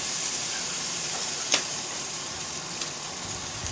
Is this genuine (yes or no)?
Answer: no